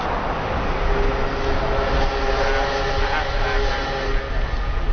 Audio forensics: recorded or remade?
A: recorded